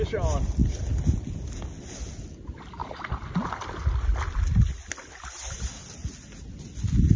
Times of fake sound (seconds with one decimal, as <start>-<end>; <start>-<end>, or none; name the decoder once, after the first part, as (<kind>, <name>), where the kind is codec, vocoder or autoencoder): none